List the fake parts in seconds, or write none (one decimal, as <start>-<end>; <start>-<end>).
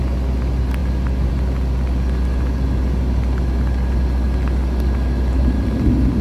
none